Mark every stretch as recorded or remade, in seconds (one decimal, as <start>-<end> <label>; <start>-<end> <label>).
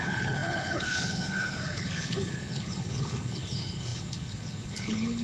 0.0-5.2 remade